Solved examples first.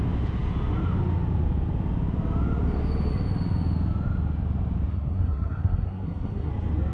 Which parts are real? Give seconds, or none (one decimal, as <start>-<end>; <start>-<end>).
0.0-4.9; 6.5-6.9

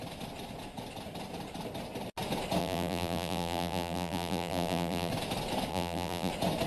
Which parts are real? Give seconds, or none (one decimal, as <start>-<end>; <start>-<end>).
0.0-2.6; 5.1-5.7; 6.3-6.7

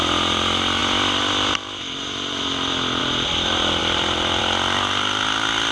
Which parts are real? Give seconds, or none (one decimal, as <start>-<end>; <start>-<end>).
0.0-0.8; 3.0-3.8; 4.4-5.7

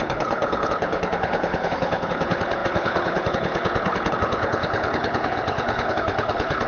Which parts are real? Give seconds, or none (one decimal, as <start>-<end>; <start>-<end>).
none

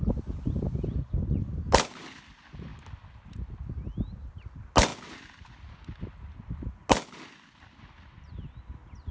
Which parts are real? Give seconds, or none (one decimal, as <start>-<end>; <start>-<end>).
0.0-9.1